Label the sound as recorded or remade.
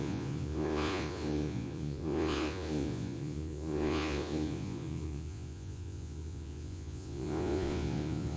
remade